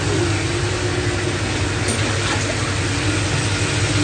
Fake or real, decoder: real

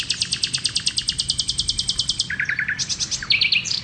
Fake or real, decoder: real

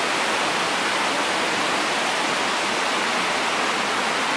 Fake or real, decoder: real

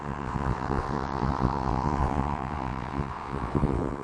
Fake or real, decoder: fake, vocoder, WaveNeXt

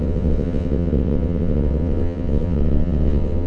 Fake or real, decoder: fake, vocoder, WaveNeXt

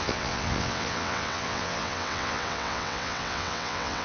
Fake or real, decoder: fake, vocoder, WaveNeXt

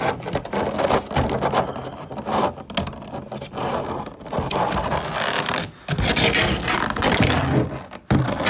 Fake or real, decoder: real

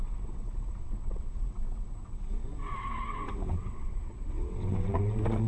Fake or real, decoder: fake, vocoder, WaveNeXt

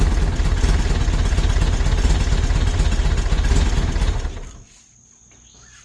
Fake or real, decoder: real